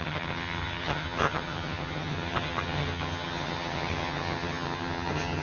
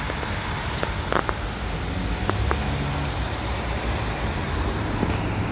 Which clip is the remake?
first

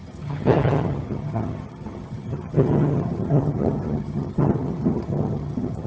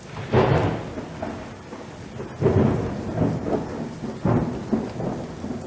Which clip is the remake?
first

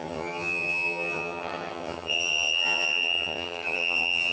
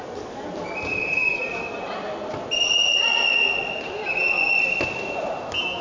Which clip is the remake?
first